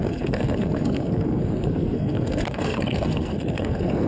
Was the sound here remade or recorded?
remade